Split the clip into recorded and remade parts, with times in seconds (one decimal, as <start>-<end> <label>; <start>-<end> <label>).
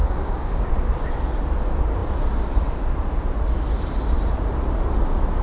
0.0-0.7 remade; 0.7-5.4 recorded